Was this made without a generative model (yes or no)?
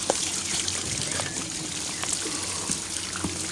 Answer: yes